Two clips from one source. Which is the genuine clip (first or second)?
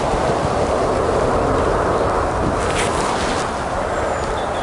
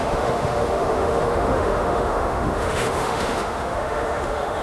first